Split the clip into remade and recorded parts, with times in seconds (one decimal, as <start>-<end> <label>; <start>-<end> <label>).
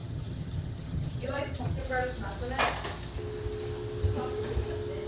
0.0-1.8 remade; 1.8-5.1 recorded